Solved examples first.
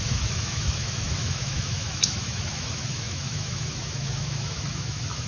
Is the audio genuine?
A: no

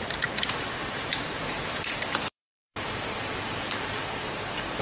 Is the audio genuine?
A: no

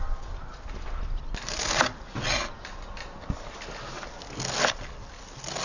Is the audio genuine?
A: yes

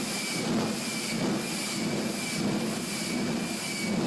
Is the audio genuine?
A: yes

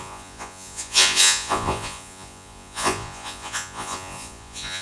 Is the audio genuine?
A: no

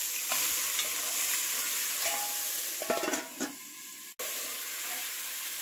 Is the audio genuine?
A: yes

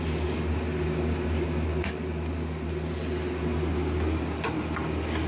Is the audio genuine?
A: yes